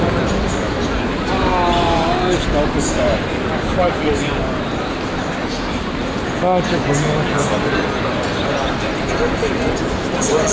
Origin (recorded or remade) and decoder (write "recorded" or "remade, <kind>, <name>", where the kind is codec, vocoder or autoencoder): recorded